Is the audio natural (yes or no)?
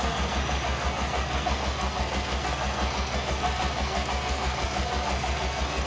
no